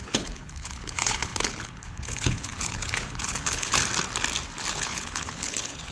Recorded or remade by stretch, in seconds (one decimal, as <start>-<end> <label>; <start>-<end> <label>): 0.0-3.7 remade; 3.7-4.7 recorded; 4.7-5.9 remade

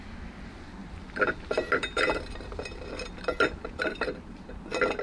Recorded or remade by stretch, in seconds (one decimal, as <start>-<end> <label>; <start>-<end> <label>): 0.0-5.0 recorded

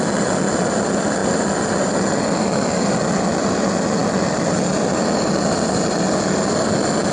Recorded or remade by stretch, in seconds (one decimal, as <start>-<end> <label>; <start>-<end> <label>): 0.0-7.1 recorded

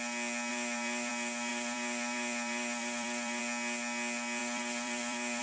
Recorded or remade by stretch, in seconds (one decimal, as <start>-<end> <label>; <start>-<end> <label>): 0.0-0.5 recorded; 0.5-1.1 remade; 1.1-1.5 recorded; 1.5-3.4 remade; 3.4-4.4 recorded; 4.4-5.4 remade

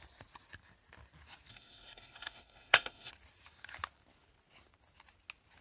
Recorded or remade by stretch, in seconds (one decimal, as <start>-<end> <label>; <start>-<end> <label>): 0.0-1.5 recorded; 1.5-3.1 remade; 3.1-5.6 recorded

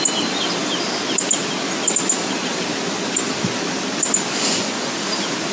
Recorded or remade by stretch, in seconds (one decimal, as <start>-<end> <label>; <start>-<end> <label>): 0.0-4.3 recorded; 4.3-4.9 remade; 4.9-5.5 recorded

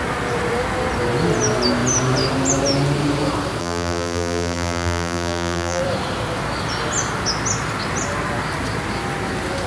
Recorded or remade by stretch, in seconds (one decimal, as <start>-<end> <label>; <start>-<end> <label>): 0.0-3.6 recorded; 3.6-5.8 remade; 5.8-9.7 recorded

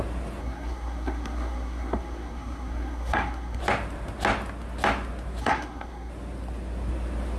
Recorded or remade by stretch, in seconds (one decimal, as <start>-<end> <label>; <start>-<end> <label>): 0.0-0.4 recorded; 0.4-3.6 remade; 3.6-5.4 recorded; 5.4-6.1 remade; 6.1-7.4 recorded